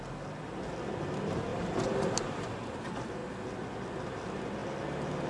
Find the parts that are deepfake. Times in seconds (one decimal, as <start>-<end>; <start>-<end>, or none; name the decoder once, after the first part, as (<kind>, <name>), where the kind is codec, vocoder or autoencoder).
1.5-2.6 (vocoder, BigVGAN v2)